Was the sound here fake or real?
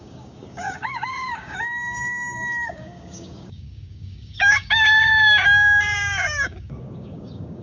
fake